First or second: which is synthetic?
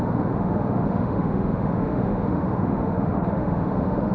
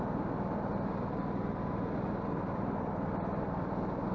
first